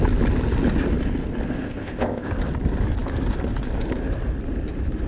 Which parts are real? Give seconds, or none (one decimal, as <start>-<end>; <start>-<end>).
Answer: 0.0-1.6; 2.3-5.1